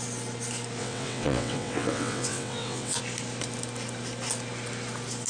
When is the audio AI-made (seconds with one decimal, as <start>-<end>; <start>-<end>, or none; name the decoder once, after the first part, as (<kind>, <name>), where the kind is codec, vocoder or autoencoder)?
0.8-3.0 (vocoder, WaveNeXt)